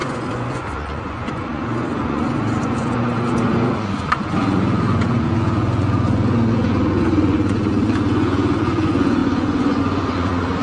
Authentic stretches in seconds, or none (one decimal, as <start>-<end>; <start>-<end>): none